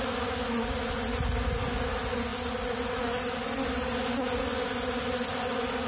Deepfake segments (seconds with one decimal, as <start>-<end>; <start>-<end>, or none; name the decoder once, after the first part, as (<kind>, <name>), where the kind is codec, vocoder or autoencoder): 2.3-2.8 (vocoder, BigVGAN v2)